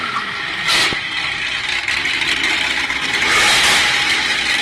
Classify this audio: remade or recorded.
recorded